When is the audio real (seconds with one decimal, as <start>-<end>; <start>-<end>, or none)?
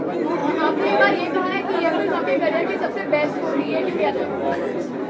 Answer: 0.0-3.5; 4.1-5.1